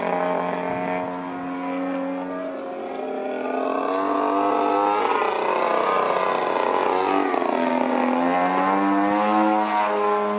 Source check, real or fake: real